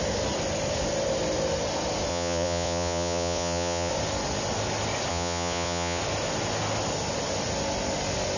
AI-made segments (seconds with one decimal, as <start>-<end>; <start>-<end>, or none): 2.1-3.9; 5.1-6.0